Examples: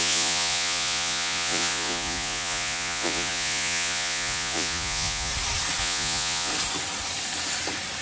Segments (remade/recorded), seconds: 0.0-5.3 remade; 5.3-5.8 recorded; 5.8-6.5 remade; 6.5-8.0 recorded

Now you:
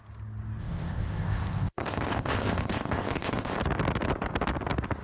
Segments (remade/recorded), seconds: 0.0-0.6 recorded; 0.6-3.6 remade; 3.6-5.0 recorded